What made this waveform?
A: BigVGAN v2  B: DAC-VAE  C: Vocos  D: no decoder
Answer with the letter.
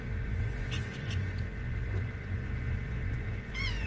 C